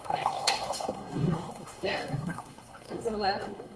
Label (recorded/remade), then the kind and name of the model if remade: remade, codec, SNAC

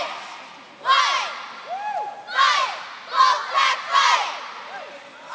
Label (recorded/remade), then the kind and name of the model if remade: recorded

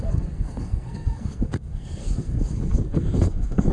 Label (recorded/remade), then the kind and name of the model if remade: remade, codec, SNAC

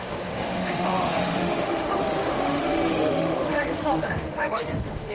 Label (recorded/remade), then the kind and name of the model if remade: remade, autoencoder, DAC-VAE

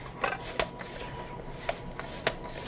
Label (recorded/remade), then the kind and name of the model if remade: recorded